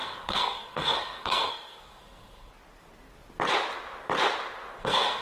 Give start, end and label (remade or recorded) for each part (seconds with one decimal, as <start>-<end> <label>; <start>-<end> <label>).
0.0-2.5 remade; 2.5-4.8 recorded; 4.8-5.2 remade